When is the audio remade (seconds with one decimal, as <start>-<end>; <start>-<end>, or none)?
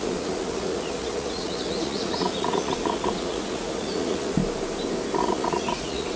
0.0-4.4; 5.2-6.2